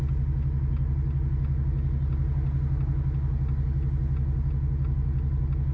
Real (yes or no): yes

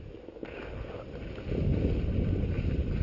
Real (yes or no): yes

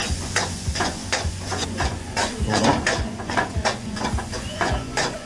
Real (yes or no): no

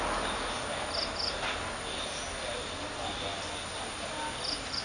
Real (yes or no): yes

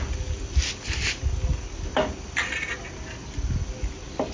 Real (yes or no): yes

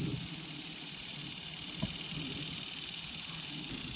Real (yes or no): yes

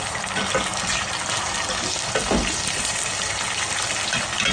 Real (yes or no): yes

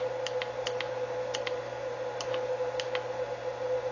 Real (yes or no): yes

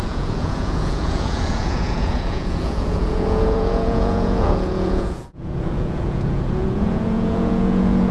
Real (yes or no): no